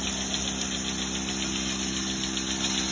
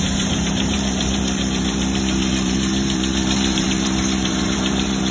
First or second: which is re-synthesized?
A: second